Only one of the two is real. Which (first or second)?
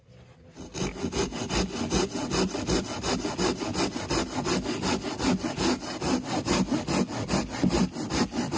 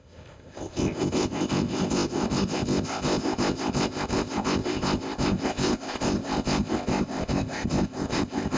first